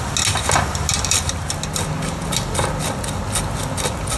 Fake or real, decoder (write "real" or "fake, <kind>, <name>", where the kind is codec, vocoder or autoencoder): real